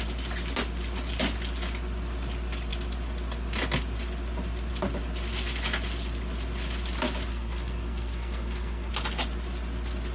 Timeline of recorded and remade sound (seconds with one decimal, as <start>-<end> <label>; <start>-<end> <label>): 0.0-7.3 recorded; 7.3-8.9 remade; 8.9-10.1 recorded